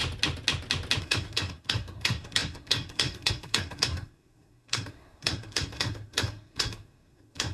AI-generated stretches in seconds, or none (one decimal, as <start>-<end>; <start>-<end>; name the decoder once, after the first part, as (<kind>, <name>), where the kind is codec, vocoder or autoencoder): 1.0-7.5 (codec, SNAC)